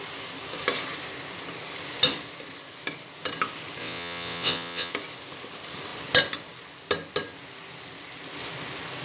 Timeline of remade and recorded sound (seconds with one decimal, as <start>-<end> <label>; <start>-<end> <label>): 0.0-3.8 recorded; 3.8-4.9 remade; 4.9-9.0 recorded